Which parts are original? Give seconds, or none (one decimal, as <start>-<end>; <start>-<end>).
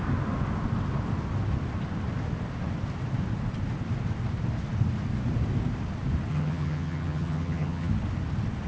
0.0-6.3; 7.9-8.7